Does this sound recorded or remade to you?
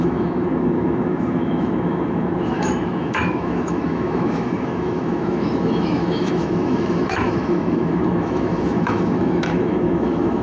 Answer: remade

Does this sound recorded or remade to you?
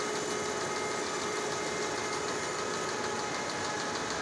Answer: recorded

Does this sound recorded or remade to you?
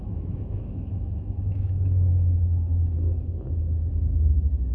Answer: remade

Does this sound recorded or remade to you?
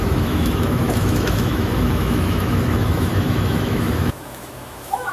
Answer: remade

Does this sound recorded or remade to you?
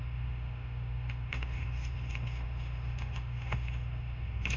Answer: remade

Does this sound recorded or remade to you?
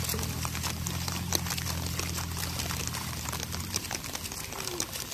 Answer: recorded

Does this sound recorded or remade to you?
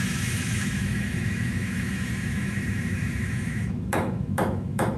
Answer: remade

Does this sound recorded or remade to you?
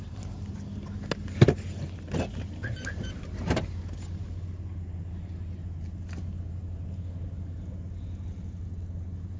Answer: recorded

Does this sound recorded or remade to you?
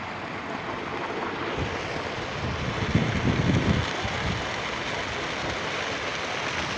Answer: recorded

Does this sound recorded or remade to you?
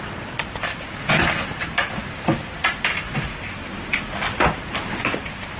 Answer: recorded